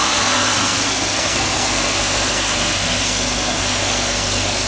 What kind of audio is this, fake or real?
fake